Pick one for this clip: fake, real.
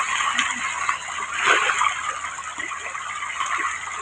real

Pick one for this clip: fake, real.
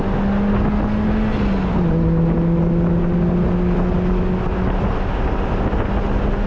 real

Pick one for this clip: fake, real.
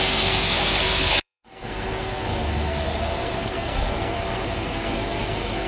fake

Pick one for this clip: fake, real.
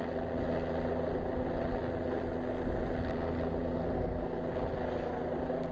real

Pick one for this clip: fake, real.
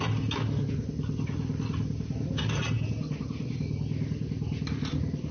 real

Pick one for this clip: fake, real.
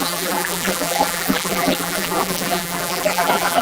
fake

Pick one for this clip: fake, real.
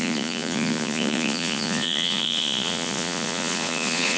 fake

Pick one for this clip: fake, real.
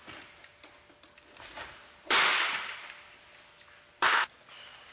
real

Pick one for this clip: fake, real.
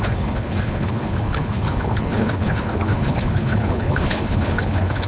fake